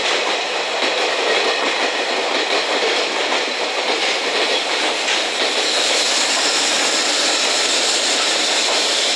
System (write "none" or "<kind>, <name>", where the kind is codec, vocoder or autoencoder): vocoder, BigVGAN v2